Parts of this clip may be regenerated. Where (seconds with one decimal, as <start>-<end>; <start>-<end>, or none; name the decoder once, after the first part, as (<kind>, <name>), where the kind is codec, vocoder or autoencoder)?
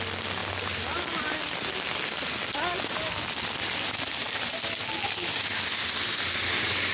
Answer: none